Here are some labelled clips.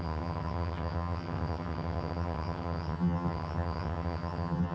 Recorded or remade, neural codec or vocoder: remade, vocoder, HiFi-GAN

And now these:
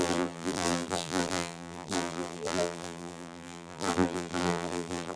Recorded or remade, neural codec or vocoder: remade, vocoder, BigVGAN v2